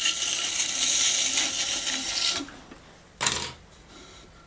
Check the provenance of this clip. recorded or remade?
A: recorded